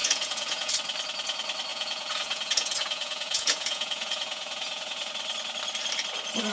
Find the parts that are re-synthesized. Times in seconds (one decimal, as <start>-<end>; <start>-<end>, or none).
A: 0.0-0.7; 1.7-5.1